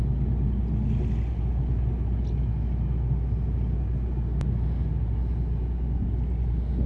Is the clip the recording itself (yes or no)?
yes